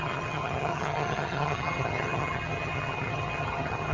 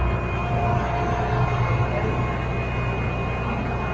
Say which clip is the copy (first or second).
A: first